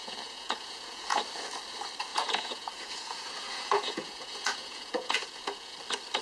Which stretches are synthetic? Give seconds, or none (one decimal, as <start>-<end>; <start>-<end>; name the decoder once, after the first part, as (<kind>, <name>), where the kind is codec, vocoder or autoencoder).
0.0-1.2 (vocoder, Vocos); 2.1-5.8